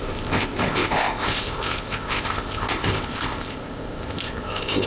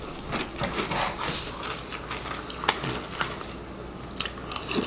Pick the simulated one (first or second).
first